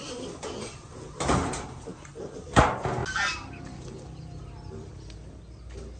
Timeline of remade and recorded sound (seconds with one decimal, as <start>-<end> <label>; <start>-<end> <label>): 0.0-6.0 recorded